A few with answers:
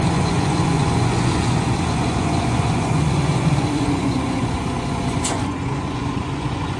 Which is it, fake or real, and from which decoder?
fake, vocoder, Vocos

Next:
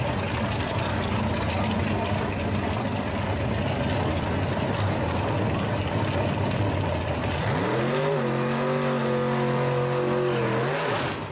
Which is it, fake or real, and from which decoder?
real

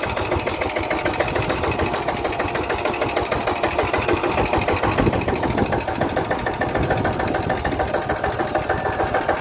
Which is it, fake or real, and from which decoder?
real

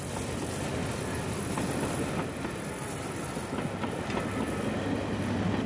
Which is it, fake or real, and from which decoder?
real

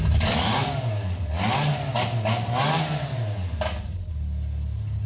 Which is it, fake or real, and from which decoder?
real